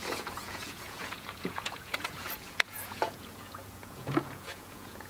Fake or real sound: fake